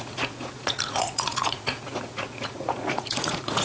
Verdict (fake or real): fake